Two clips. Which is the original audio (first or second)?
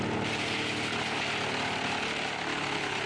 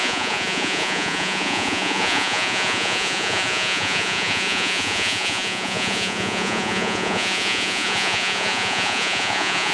first